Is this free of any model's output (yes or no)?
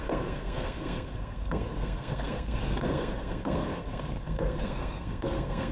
no